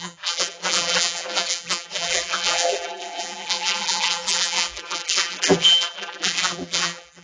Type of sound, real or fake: fake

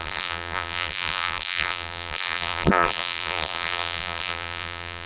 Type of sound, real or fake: fake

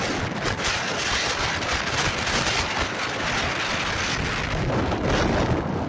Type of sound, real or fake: real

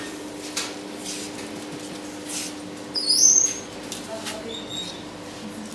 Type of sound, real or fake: real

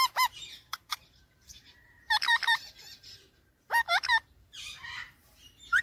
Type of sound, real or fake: fake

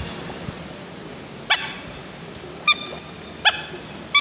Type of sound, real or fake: real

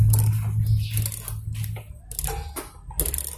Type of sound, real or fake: real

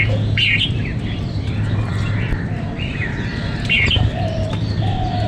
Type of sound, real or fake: fake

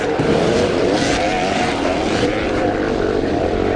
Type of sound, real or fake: fake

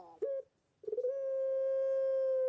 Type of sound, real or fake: real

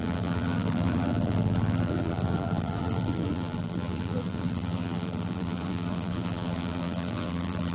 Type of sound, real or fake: fake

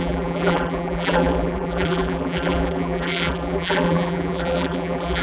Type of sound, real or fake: fake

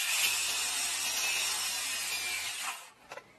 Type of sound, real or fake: real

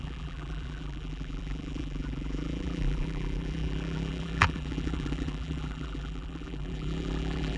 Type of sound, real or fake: fake